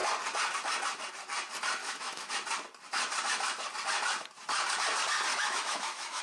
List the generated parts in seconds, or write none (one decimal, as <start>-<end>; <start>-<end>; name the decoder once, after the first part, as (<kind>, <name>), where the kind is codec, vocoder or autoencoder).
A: 1.8-2.3 (autoencoder, DAC-VAE); 5.3-6.2